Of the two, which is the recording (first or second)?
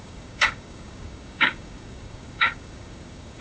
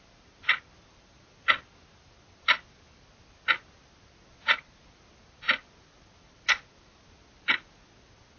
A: second